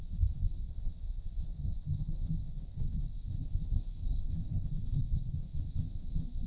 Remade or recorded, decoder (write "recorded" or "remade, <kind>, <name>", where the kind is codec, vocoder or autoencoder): remade, codec, SNAC